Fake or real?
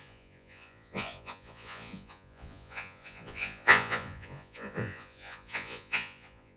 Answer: fake